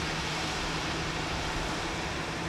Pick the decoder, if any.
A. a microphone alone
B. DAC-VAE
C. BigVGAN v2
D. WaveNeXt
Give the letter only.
C